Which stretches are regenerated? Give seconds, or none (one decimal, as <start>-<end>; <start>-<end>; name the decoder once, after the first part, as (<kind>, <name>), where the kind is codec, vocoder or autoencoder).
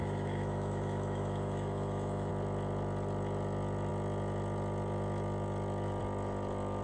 0.0-2.3 (autoencoder, DAC-VAE)